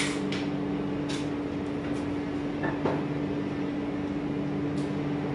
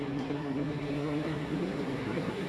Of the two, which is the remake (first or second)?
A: second